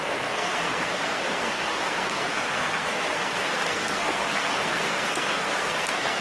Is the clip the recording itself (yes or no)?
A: no